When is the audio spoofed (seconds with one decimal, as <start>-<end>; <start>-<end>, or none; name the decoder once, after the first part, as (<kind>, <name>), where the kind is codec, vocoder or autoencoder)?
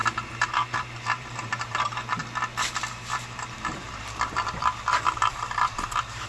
0.0-2.2 (vocoder, BigVGAN v2); 2.9-6.3